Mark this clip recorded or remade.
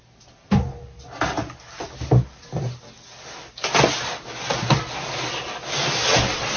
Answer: recorded